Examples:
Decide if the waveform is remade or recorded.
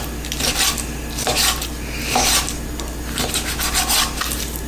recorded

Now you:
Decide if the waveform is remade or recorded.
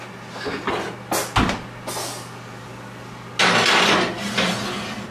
recorded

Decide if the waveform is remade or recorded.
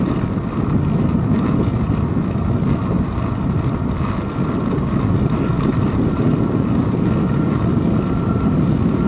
recorded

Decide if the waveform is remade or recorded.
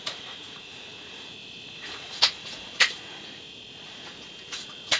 remade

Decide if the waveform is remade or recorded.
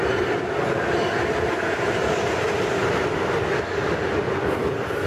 recorded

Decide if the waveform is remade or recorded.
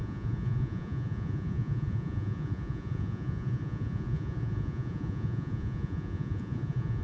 remade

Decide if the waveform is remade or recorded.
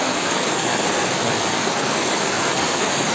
remade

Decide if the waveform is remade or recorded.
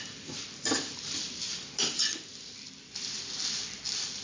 recorded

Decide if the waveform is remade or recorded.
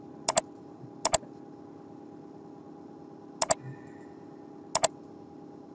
recorded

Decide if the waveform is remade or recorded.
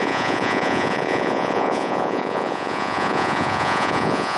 remade